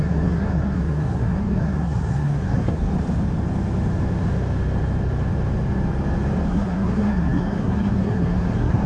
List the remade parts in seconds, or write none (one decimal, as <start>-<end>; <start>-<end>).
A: 0.0-2.9; 6.5-8.9